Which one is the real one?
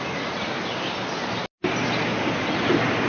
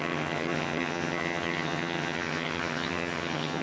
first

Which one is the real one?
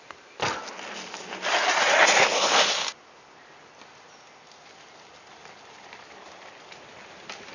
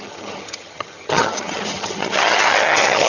first